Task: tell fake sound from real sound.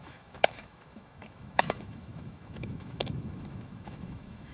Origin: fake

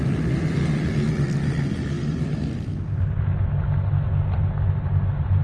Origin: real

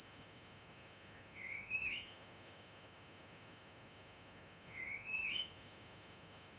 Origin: fake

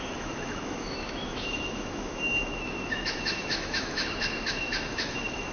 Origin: fake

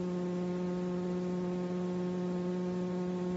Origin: real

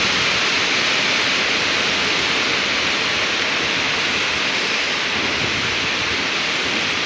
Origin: real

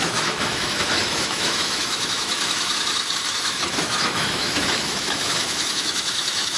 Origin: fake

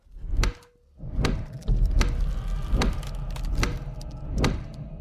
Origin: real